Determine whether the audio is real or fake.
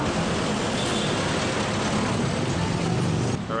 real